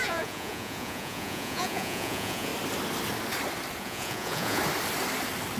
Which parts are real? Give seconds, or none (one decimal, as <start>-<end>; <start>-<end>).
2.5-3.8; 4.6-5.6